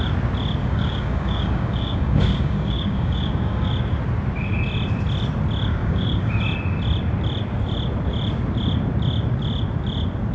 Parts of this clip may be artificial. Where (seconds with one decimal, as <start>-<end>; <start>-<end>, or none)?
0.6-3.7; 5.8-6.4